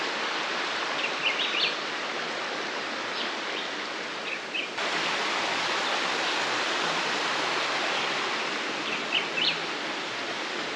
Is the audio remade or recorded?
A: recorded